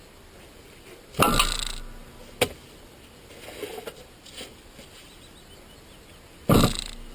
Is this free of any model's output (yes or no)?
yes